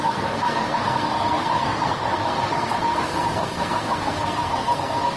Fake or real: fake